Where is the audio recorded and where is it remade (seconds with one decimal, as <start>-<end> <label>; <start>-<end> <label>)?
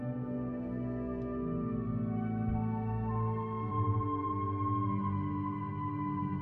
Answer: 0.0-3.7 recorded; 3.7-4.3 remade; 4.3-6.4 recorded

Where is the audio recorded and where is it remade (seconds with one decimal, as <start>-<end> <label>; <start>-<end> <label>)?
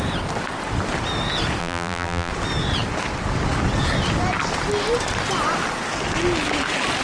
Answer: 0.0-1.6 recorded; 1.6-2.3 remade; 2.3-7.0 recorded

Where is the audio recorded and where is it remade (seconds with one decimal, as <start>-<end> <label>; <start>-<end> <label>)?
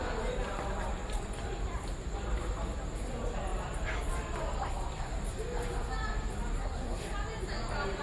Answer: 0.0-6.6 recorded; 6.6-7.1 remade; 7.1-8.0 recorded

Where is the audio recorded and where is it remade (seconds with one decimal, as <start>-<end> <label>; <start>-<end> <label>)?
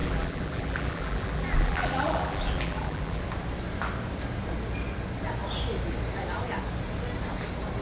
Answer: 0.0-3.2 remade; 3.2-7.8 recorded